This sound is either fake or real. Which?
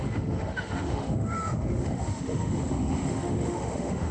fake